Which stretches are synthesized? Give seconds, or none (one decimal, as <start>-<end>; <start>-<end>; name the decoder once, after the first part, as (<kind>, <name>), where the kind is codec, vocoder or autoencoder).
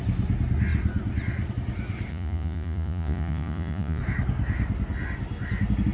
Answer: 2.1-4.0 (vocoder, Vocos)